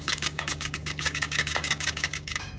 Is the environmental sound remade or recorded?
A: remade